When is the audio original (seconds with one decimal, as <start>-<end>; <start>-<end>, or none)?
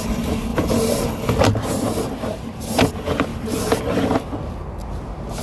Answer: 0.0-5.4